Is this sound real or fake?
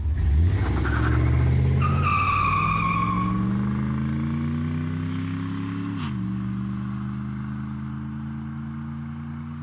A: real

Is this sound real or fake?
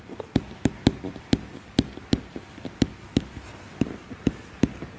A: real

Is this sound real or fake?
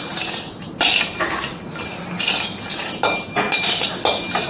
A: real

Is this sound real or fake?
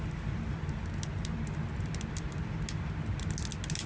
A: real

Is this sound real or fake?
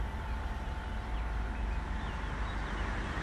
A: real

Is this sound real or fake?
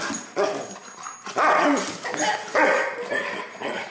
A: real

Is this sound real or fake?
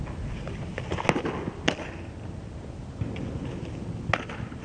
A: real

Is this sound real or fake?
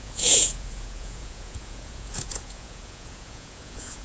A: fake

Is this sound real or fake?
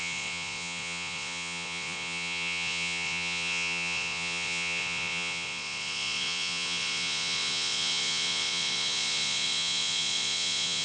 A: fake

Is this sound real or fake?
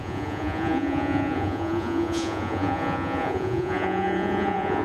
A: fake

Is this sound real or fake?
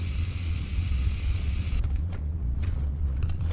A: fake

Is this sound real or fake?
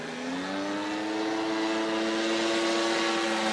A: real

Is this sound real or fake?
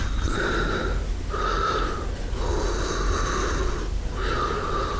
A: real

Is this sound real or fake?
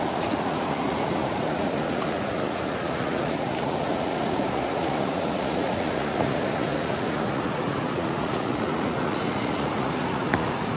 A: fake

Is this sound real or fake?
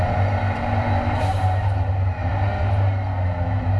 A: real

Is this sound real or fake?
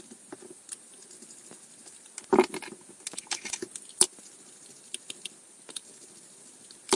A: real